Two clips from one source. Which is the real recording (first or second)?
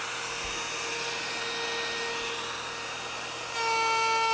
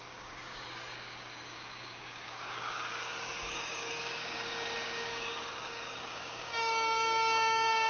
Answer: first